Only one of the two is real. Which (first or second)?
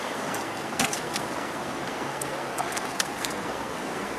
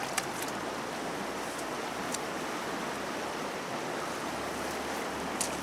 second